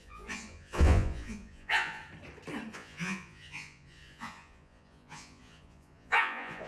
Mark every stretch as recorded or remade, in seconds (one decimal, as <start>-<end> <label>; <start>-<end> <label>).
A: 0.0-2.0 remade; 2.0-2.7 recorded; 2.7-6.7 remade